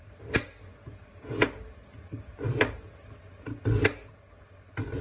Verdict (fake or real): real